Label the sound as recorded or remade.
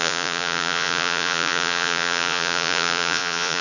remade